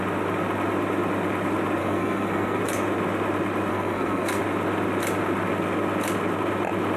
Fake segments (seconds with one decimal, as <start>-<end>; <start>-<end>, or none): 1.8-2.6; 3.7-4.4